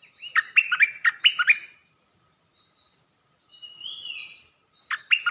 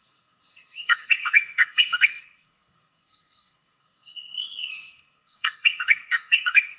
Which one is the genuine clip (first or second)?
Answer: first